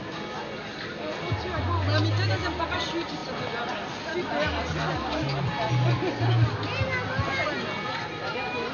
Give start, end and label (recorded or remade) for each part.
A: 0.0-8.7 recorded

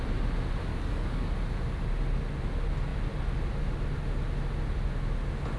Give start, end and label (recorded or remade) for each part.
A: 0.0-0.7 recorded; 0.7-1.3 remade; 1.3-5.6 recorded

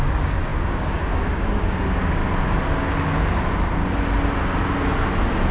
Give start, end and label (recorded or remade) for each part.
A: 0.0-2.2 remade; 2.2-5.5 recorded

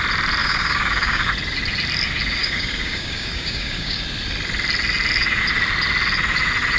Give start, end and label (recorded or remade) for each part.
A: 0.0-0.4 recorded; 0.4-1.3 remade; 1.3-2.4 recorded; 2.4-4.0 remade; 4.0-6.8 recorded

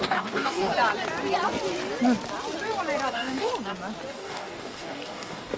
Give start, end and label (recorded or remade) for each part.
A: 0.0-0.7 remade; 0.7-3.1 recorded; 3.1-3.5 remade; 3.5-4.1 recorded; 4.1-5.6 remade